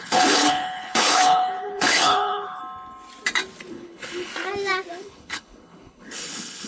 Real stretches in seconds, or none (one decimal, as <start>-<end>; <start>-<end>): 2.6-3.7; 4.3-4.9